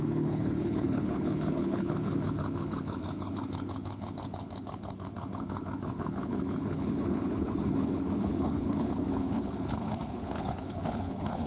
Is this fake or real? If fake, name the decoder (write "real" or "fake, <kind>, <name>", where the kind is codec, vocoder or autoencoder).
fake, codec, HILCodec